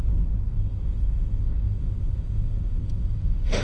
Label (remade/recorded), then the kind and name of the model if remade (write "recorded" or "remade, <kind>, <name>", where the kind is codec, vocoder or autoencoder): remade, autoencoder, DAC-VAE